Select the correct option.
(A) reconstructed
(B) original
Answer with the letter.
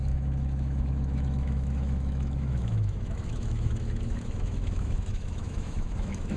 A